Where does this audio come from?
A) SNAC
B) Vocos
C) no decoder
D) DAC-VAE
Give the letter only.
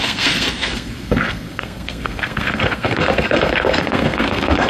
A